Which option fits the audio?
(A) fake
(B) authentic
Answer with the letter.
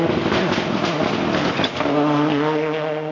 B